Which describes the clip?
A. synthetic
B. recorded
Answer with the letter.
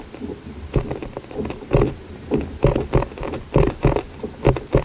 B